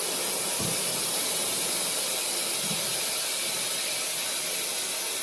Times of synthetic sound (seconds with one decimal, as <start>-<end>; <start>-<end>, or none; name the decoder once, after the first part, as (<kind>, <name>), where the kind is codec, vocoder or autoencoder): none